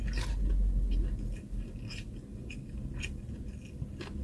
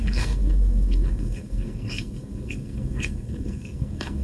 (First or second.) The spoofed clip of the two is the second